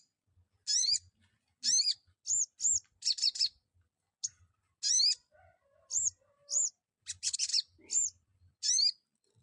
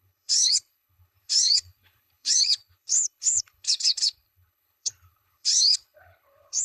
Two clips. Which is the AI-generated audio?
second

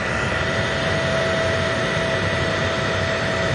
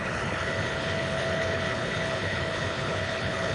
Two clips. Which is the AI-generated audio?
second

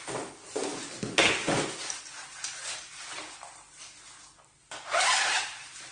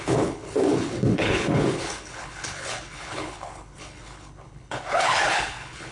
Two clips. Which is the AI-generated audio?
second